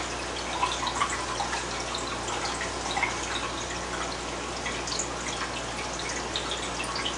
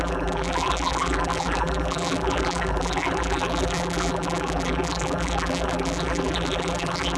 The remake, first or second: second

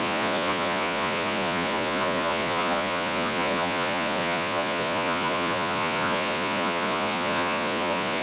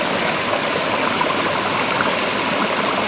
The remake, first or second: first